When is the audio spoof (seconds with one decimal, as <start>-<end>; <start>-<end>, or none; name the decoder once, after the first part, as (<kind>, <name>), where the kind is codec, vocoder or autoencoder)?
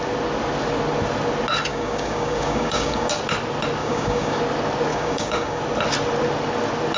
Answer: 1.7-3.1 (codec, DAC); 3.8-4.4; 4.9-5.6